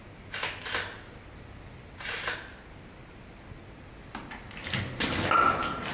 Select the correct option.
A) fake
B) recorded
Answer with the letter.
B